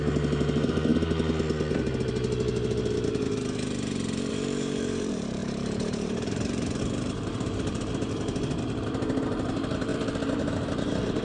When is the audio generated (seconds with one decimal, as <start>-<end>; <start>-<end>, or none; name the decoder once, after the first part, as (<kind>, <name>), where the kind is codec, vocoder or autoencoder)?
0.0-0.9 (vocoder, BigVGAN v2); 4.3-9.9; 10.4-11.2